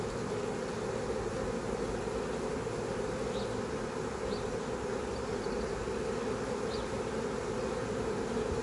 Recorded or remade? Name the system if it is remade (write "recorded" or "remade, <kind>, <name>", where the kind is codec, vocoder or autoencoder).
recorded